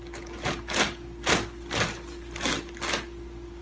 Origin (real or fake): real